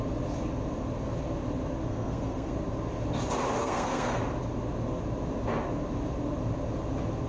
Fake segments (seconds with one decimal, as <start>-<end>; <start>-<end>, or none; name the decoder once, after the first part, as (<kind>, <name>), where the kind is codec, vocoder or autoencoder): 1.9-2.5 (codec, SNAC); 3.6-4.2

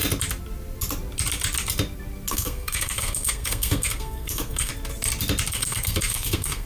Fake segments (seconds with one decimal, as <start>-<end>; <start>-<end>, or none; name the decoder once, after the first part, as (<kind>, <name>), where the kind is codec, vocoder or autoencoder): 2.3-4.7 (codec, SNAC); 5.5-6.7